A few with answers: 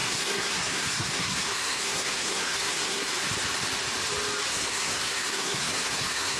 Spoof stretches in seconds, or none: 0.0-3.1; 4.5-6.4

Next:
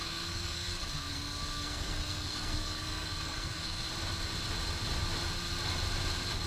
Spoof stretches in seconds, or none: 0.0-3.9

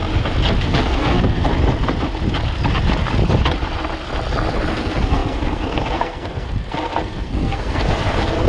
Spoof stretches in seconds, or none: 0.6-1.5; 4.7-8.5